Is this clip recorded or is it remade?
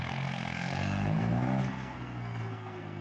remade